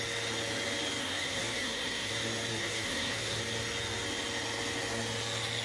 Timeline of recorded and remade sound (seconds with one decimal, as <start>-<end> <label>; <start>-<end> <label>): 0.0-1.0 recorded; 1.0-2.1 remade; 2.1-2.5 recorded; 2.5-3.4 remade; 3.4-5.6 recorded